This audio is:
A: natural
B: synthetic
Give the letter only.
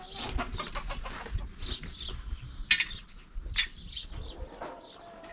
A